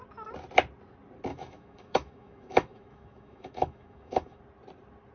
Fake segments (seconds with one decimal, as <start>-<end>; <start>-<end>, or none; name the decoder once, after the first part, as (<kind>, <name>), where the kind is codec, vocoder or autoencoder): 1.3-4.4 (autoencoder, DAC-VAE)